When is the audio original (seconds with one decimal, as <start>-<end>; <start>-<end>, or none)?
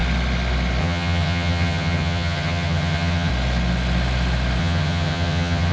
0.0-0.8; 3.3-4.6